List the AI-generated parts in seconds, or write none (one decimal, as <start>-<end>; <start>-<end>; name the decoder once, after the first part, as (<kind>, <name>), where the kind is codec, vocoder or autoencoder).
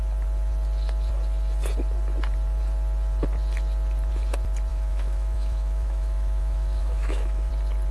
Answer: 4.7-7.5 (autoencoder, DAC-VAE)